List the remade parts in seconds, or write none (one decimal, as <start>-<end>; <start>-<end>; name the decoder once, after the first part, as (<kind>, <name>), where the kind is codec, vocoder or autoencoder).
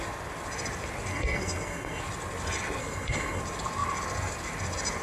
1.1-2.0 (codec, SNAC); 2.8-3.4